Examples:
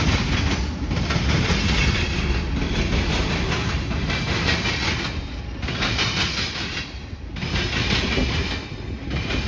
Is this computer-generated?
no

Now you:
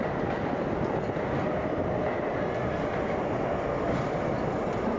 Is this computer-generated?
no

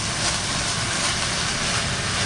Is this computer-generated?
no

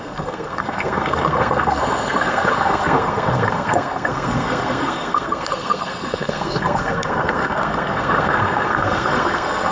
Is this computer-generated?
yes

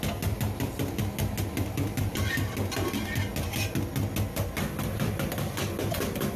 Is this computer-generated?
no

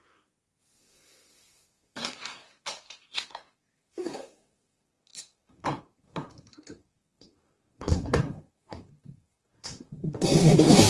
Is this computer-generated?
yes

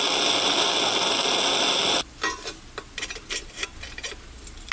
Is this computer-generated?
no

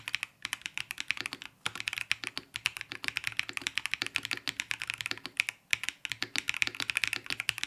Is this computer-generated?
no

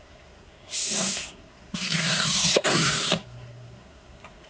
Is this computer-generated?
yes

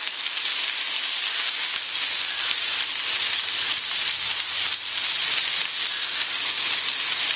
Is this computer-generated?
no